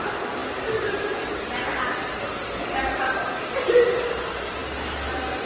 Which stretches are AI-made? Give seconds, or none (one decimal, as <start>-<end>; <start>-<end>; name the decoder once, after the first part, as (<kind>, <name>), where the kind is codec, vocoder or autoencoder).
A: none